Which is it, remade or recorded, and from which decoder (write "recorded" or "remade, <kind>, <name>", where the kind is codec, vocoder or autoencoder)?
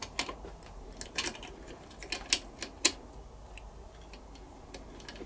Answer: recorded